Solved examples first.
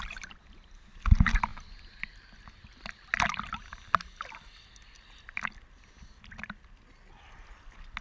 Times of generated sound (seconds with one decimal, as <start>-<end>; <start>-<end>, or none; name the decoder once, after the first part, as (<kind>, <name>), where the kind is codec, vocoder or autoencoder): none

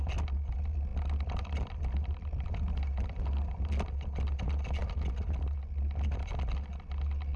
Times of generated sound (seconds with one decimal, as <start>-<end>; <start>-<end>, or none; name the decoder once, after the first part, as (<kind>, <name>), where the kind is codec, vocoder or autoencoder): 0.9-2.5 (vocoder, BigVGAN v2); 4.8-5.4

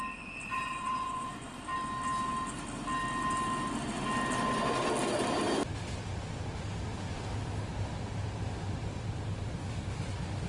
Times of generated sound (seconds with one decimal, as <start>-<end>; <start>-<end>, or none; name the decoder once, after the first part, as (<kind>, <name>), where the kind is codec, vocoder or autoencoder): 0.5-1.5 (vocoder, Vocos)

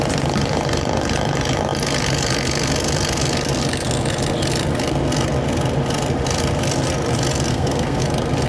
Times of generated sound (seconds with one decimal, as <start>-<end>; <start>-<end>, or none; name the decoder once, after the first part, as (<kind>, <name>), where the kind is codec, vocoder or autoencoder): 7.5-8.0 (codec, SNAC)

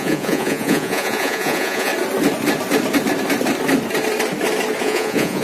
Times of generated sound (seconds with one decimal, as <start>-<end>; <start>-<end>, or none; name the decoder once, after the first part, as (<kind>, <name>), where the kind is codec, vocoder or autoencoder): 0.0-1.9 (vocoder, Vocos); 4.8-5.4

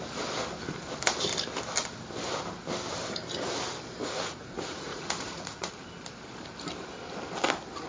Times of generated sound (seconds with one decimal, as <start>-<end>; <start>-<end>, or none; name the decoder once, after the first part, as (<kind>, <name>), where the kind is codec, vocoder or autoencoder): 4.0-5.7 (vocoder, Vocos)

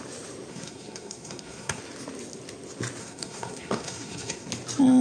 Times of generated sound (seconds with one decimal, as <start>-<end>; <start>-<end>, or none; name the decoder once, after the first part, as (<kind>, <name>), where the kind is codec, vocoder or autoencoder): 0.5-1.8 (codec, SNAC); 3.0-4.5